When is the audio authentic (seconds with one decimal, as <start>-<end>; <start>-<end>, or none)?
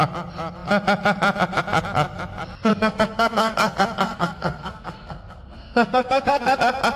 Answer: 0.0-2.7; 6.6-7.0